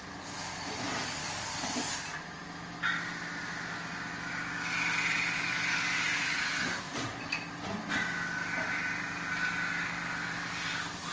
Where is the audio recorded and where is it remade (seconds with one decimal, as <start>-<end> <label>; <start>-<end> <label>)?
0.0-1.2 recorded; 1.2-1.9 remade; 1.9-11.1 recorded